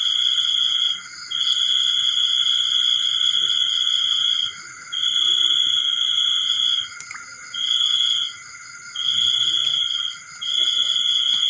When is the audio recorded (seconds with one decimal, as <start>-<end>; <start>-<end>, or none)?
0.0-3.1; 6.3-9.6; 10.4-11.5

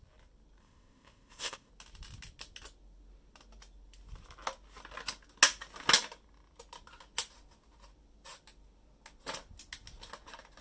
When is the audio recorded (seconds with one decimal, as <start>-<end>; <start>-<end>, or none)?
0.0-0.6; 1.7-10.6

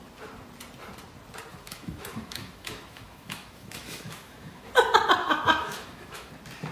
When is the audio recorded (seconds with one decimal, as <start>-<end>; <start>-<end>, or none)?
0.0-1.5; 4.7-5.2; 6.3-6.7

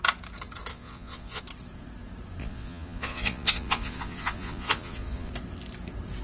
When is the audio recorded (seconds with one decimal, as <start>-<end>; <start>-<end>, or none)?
0.0-0.7; 1.4-2.4; 5.3-6.2

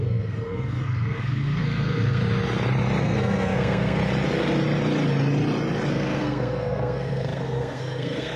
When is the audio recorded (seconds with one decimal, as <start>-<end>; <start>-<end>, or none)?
2.2-3.0; 4.0-5.9